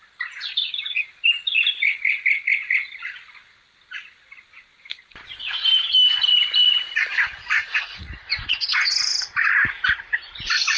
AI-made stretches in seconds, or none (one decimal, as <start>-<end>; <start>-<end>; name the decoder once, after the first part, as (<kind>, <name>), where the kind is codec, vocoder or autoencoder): 7.6-8.9 (vocoder, Vocos)